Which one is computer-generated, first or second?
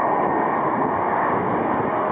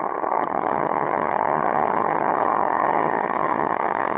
second